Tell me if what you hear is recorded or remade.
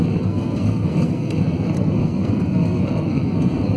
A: remade